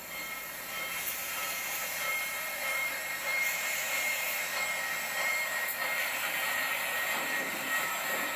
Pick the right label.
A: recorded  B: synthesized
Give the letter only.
B